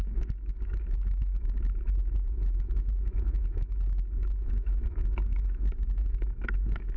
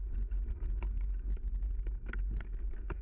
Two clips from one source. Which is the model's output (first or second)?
first